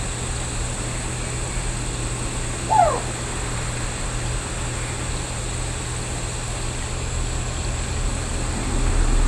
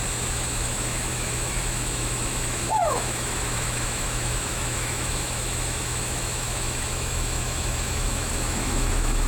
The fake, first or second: second